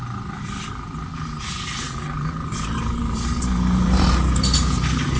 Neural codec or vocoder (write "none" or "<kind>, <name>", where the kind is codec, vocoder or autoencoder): vocoder, BigVGAN v2